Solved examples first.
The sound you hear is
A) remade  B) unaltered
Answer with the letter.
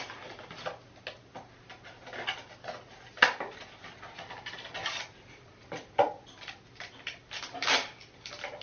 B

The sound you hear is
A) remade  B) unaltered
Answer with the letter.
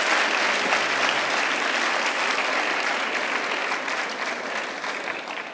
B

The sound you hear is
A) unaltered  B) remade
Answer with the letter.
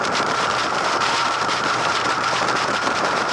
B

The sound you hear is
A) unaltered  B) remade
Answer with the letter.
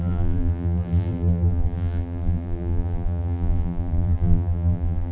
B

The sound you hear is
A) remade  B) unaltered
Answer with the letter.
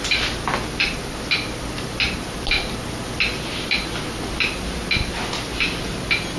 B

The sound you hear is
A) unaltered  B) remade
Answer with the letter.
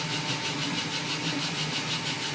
A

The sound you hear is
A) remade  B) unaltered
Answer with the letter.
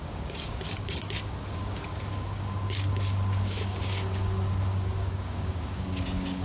A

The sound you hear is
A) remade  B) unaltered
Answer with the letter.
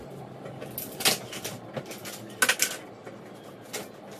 B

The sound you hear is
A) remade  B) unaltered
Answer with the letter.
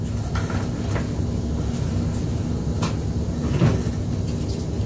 B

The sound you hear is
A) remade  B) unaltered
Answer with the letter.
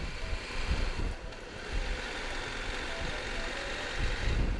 B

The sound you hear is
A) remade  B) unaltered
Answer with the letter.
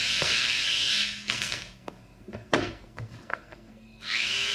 A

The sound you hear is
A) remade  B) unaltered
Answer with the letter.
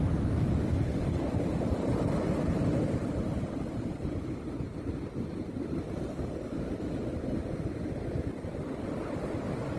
B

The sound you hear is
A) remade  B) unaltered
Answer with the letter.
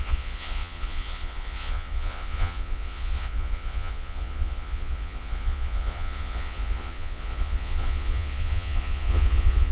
A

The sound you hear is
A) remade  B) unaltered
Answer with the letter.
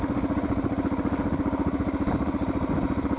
B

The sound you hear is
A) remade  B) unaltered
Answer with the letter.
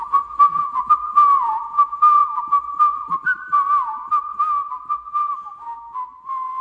B